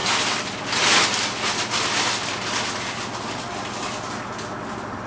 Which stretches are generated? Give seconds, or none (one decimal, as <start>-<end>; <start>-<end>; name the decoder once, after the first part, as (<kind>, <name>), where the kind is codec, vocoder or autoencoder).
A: none